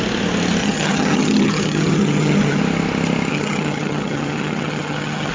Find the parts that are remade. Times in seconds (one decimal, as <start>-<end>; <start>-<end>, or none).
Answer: 0.6-2.6; 3.3-5.3